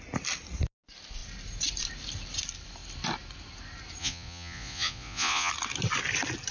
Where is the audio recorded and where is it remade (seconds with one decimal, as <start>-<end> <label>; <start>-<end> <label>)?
0.0-4.0 recorded; 4.0-5.5 remade; 5.5-6.5 recorded